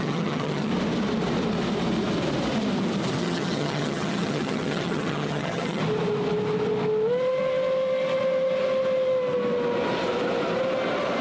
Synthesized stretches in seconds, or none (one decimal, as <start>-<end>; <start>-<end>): 0.0-0.7; 3.2-5.8